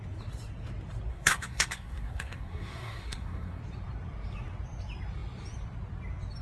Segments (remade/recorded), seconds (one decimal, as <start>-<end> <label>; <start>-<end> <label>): 0.0-1.1 recorded; 1.1-3.6 remade; 3.6-6.4 recorded